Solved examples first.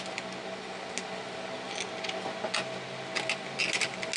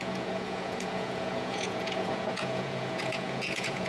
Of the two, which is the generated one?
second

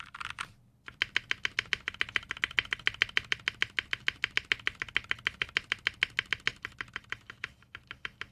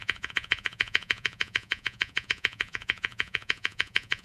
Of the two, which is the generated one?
second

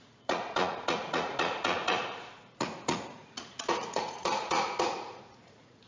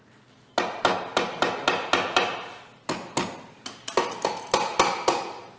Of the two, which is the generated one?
first